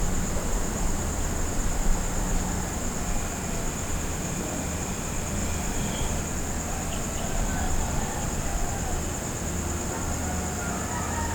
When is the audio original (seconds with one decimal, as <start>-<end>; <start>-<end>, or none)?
0.0-5.4; 6.2-11.3